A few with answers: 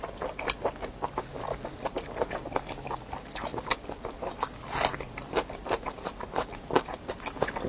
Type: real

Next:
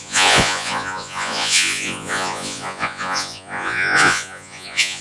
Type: fake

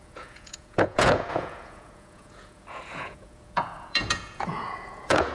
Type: fake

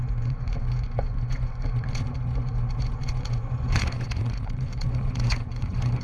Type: fake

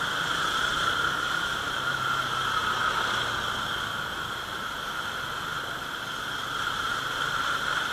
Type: real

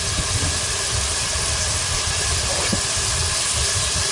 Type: real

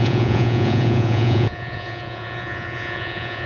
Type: fake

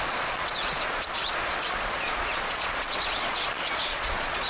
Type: fake